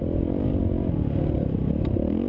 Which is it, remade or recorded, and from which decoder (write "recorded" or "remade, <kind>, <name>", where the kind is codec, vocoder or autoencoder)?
recorded